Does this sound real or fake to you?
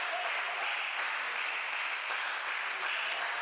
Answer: real